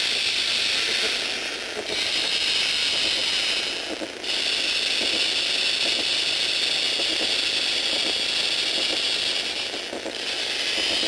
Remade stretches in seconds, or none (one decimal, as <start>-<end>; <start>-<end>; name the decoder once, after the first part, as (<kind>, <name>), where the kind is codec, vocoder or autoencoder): none

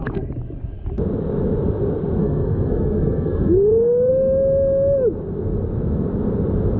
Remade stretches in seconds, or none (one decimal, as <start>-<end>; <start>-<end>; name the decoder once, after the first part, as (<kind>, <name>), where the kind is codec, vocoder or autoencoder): 2.2-4.1 (codec, SNAC)